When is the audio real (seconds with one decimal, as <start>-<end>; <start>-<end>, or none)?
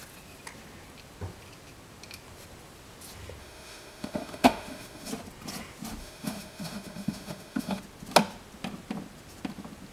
0.0-3.4; 5.1-6.0; 7.8-9.9